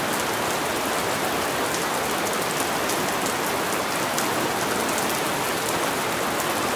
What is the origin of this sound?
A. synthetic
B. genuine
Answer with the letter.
B